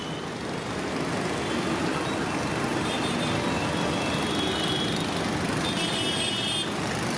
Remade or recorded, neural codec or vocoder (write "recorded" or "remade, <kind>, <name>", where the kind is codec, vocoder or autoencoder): recorded